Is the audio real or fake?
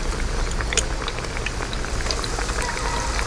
real